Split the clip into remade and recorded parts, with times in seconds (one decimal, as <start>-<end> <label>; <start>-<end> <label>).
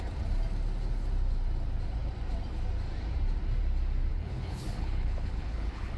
0.0-4.1 recorded; 4.1-6.0 remade